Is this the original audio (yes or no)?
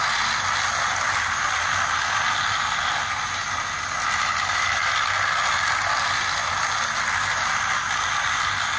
yes